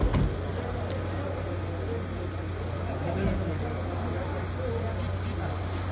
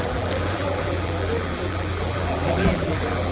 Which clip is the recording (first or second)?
first